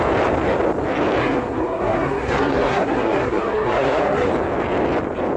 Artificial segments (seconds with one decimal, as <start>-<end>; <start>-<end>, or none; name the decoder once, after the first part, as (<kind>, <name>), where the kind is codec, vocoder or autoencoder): 1.2-4.3 (codec, SNAC)